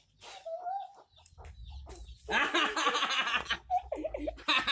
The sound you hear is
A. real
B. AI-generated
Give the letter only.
A